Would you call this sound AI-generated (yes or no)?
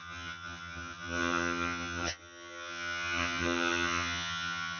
yes